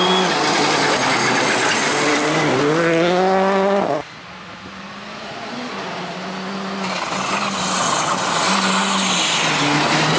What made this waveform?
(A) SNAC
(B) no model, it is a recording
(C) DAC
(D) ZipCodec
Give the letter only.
B